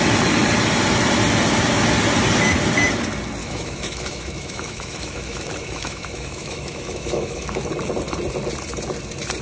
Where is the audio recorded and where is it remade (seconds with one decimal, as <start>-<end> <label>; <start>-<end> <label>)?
0.0-3.4 recorded; 3.4-7.6 remade; 7.6-9.4 recorded